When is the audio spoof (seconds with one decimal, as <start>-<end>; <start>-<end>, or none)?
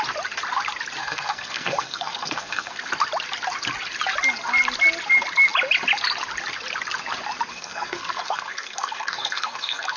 1.0-2.9; 7.5-10.0